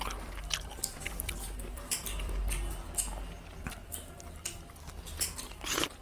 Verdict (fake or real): real